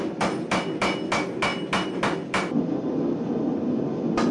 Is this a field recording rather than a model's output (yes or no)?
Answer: yes